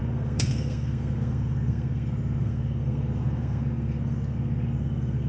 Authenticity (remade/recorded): remade